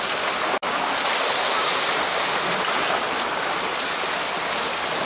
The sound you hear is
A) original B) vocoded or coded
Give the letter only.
A